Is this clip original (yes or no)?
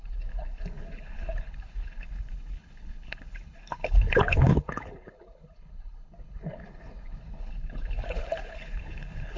no